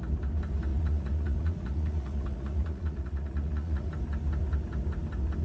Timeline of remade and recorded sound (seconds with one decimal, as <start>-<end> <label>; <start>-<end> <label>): 0.0-0.7 recorded; 0.7-3.9 remade; 3.9-5.4 recorded